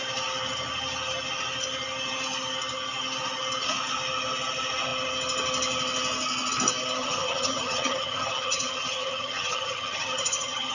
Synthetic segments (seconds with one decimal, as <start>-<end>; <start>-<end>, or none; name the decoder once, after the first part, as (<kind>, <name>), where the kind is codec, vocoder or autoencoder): 7.0-10.7 (vocoder, HiFi-GAN)